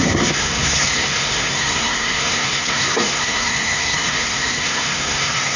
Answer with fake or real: fake